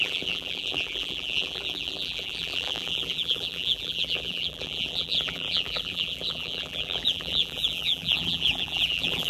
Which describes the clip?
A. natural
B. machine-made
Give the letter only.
B